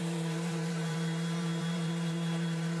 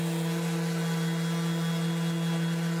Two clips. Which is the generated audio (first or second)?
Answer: first